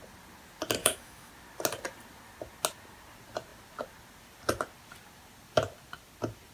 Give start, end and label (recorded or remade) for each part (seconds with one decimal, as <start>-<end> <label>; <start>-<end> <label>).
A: 0.0-0.8 recorded; 0.8-1.3 remade; 1.3-6.5 recorded